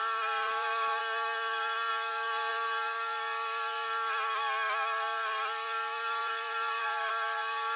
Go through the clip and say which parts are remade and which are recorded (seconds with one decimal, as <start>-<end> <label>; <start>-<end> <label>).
0.0-1.0 remade; 1.0-6.2 recorded; 6.2-7.1 remade; 7.1-7.8 recorded